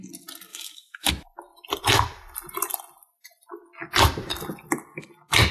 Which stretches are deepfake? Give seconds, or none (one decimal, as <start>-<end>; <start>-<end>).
0.5-1.1

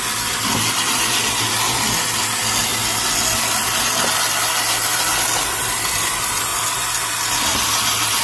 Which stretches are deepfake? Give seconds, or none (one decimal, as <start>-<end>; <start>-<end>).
none

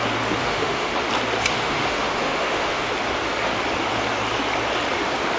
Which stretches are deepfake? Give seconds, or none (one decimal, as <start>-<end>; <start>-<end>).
0.4-0.9; 1.5-2.9

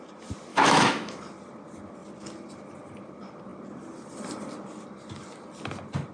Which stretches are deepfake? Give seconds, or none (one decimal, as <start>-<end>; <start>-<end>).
0.5-1.2

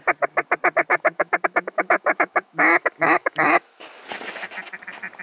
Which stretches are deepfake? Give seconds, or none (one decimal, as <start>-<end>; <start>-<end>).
0.9-4.0

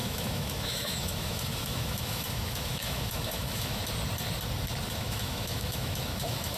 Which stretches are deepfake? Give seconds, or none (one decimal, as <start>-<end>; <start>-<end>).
0.0-3.8; 4.9-6.6